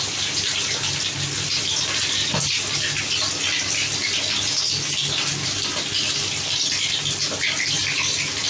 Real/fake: real